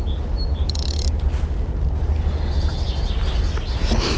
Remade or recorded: recorded